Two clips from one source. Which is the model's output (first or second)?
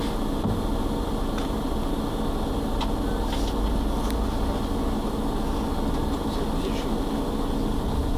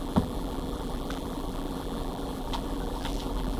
second